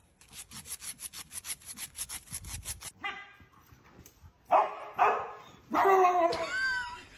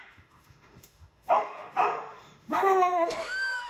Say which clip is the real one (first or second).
first